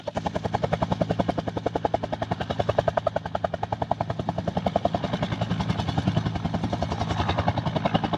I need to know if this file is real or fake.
real